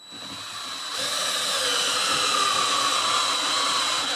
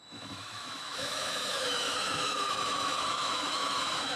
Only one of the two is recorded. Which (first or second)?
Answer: first